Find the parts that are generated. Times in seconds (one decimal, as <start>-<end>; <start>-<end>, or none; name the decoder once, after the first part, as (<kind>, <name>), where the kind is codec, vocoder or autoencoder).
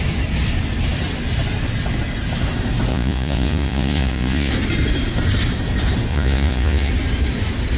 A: 2.9-4.5 (vocoder, Vocos); 6.1-6.9